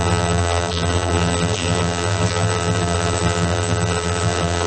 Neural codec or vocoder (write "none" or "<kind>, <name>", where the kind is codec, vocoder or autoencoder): vocoder, BigVGAN v2